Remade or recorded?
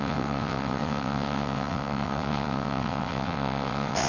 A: remade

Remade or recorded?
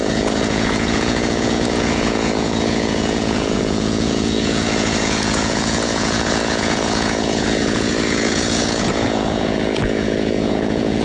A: remade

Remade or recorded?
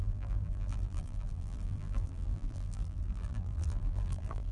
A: remade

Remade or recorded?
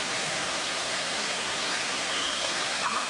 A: remade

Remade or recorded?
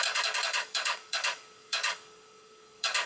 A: remade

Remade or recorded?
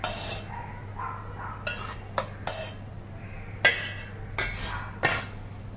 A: recorded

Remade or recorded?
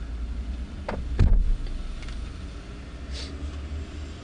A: recorded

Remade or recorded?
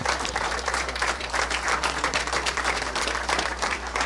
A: remade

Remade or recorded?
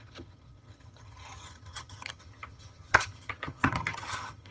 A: remade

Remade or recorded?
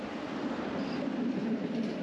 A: recorded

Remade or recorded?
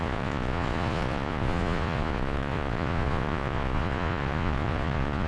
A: remade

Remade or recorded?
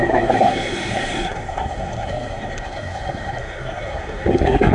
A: remade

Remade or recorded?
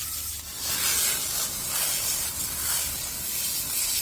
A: recorded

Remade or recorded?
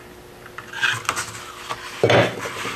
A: recorded